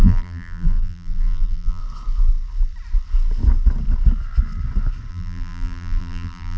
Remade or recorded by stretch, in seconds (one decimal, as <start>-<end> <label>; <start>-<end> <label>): 0.0-1.8 remade; 1.8-5.1 recorded; 5.1-6.6 remade